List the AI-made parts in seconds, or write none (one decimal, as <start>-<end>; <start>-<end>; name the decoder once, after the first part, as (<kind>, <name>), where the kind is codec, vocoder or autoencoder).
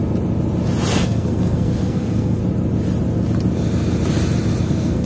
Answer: 0.9-2.4 (codec, SNAC); 4.6-5.1